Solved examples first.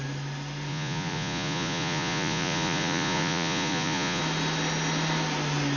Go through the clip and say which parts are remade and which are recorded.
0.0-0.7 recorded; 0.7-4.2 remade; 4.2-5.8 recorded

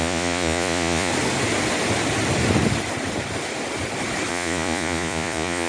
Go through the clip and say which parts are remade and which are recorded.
0.0-1.1 remade; 1.1-4.3 recorded; 4.3-5.7 remade

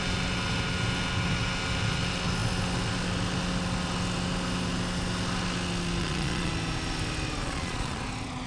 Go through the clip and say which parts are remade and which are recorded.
0.0-6.0 recorded; 6.0-6.5 remade; 6.5-7.4 recorded; 7.4-8.0 remade; 8.0-8.5 recorded

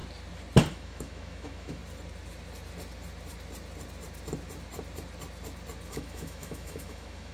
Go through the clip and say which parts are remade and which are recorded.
0.0-0.7 recorded; 0.7-1.8 remade; 1.8-5.9 recorded; 5.9-7.3 remade

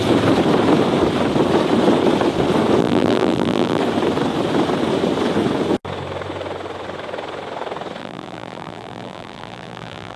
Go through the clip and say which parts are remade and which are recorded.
0.0-2.8 recorded; 2.8-3.8 remade; 3.8-8.0 recorded; 8.0-10.2 remade

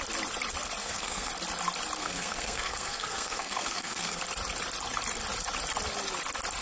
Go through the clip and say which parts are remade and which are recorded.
0.0-0.8 recorded; 0.8-1.3 remade; 1.3-2.0 recorded; 2.0-4.2 remade; 4.2-6.6 recorded